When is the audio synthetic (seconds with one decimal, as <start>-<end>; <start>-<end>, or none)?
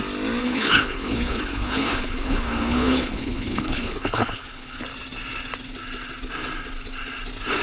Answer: 0.4-4.8